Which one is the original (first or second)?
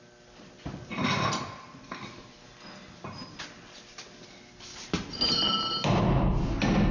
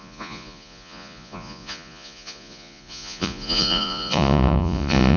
first